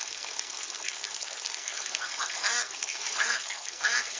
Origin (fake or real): fake